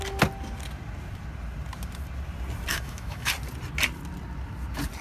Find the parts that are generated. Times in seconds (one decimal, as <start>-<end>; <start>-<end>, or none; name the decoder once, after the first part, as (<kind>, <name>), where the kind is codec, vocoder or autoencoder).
2.7-3.3 (autoencoder, DAC-VAE)